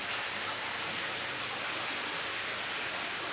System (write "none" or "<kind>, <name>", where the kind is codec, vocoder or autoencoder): none